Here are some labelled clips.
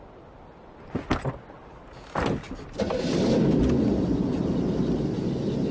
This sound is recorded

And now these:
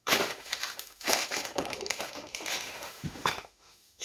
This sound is remade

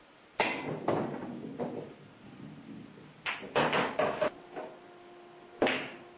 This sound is recorded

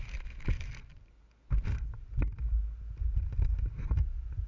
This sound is recorded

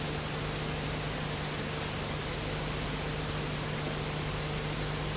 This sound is recorded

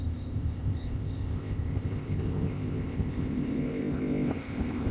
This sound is remade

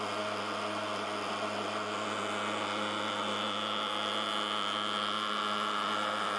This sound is recorded